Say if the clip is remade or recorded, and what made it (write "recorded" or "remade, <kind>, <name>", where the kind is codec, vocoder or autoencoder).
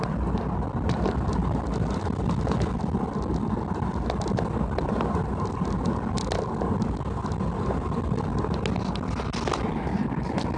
recorded